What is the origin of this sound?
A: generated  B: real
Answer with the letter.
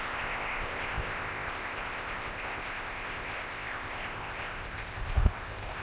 A